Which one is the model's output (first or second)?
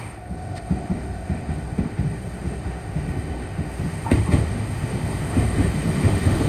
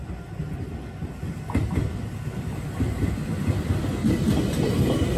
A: first